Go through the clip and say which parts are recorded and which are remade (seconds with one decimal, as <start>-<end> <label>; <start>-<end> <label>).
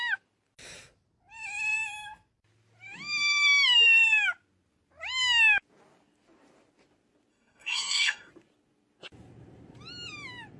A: 0.0-7.3 recorded; 7.3-8.3 remade; 8.3-10.6 recorded